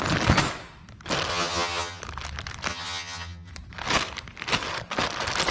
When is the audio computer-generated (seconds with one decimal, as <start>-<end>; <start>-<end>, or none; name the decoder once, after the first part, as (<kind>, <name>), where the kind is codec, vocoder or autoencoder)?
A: 1.3-2.0 (vocoder, HiFi-GAN); 2.7-3.5